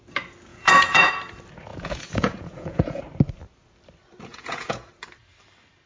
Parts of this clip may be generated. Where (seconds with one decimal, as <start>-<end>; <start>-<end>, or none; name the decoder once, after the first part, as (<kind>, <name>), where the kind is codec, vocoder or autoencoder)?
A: 0.5-1.1 (vocoder, Vocos); 1.7-3.0; 4.3-4.9

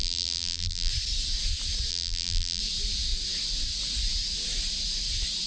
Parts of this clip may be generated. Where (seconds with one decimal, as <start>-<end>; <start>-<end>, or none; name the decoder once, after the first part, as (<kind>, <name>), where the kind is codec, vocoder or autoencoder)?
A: 0.0-0.9 (vocoder, BigVGAN v2); 1.9-2.6

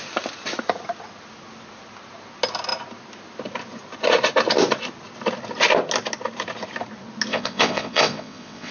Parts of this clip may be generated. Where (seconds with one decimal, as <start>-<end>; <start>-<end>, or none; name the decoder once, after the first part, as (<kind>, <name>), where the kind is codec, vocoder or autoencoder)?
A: 7.3-8.7 (vocoder, WaveNeXt)

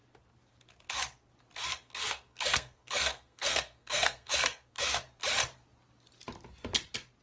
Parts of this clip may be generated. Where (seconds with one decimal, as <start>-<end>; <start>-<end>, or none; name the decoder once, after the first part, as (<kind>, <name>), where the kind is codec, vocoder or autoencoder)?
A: 1.7-5.0 (codec, SNAC)

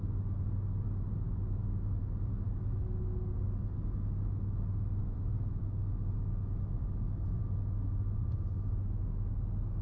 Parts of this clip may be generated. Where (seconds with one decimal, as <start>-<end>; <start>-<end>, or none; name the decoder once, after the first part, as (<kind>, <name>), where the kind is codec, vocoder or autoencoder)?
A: none

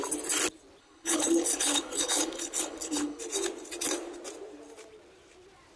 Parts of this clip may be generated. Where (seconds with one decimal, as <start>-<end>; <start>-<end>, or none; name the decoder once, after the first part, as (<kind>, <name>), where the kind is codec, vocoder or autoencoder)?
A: 0.8-3.2 (codec, HILCodec)

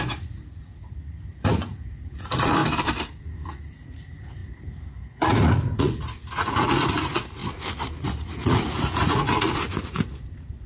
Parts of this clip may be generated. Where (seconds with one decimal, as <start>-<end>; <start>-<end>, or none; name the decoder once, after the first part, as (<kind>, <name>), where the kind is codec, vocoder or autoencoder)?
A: 0.0-2.6 (vocoder, Vocos); 3.2-7.4; 8.0-10.7